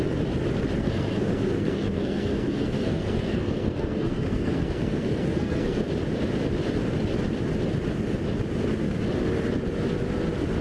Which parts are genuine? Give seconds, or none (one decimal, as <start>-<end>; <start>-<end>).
0.0-0.8; 5.8-10.6